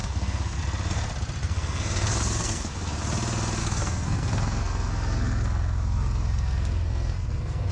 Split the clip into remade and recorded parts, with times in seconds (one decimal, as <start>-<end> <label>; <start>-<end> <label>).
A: 0.0-0.6 remade; 0.6-1.4 recorded; 1.4-3.0 remade; 3.0-3.6 recorded; 3.6-7.7 remade